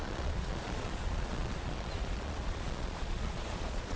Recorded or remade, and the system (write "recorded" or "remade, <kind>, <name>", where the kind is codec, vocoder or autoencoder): remade, vocoder, Vocos